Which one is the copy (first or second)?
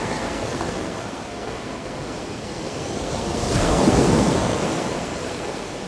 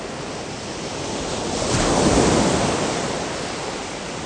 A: first